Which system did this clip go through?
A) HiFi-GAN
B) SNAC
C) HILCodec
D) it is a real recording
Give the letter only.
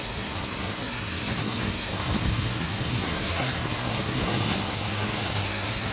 B